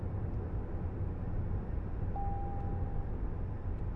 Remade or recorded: recorded